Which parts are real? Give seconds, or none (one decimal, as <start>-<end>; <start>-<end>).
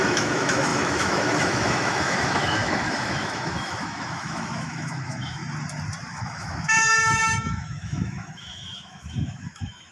5.4-6.1